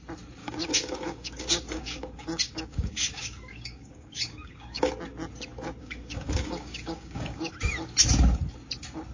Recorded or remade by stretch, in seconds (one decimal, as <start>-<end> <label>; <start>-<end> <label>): 0.0-0.4 recorded; 0.4-4.9 remade; 4.9-5.8 recorded; 5.8-7.5 remade; 7.5-9.1 recorded